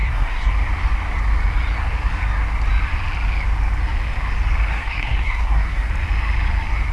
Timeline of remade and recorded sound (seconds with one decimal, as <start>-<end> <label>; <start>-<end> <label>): 0.0-0.5 remade; 0.5-4.7 recorded; 4.7-5.9 remade; 5.9-6.9 recorded